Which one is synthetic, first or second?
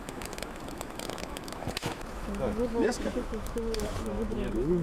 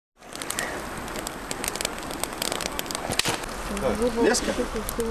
first